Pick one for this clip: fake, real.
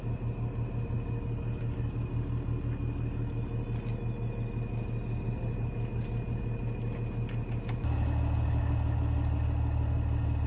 real